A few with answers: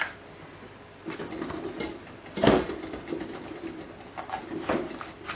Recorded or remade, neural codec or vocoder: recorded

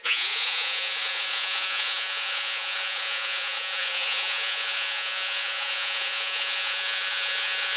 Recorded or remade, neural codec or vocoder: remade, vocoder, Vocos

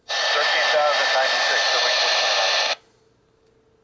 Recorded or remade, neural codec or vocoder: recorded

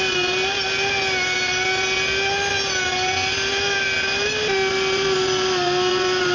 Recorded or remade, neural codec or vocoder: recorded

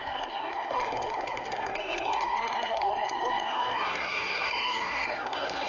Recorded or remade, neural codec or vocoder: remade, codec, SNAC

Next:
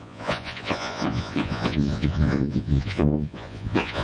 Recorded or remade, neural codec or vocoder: remade, vocoder, Vocos